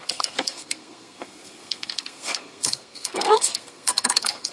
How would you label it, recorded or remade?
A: remade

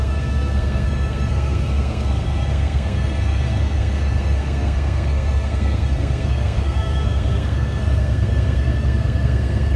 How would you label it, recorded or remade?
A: remade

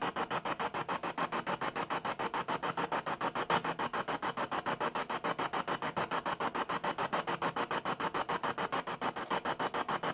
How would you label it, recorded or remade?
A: recorded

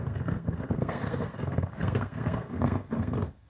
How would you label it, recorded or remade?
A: remade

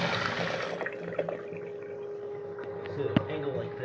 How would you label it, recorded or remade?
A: recorded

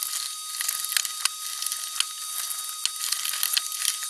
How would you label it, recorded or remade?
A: recorded